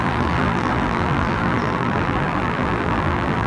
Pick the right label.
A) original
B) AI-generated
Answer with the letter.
B